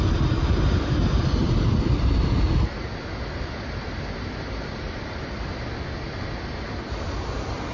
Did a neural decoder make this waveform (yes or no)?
no